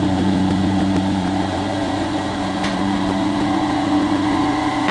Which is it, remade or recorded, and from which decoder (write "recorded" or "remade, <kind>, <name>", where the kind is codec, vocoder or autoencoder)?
remade, vocoder, Vocos